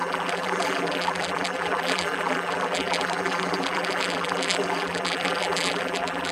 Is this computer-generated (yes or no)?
yes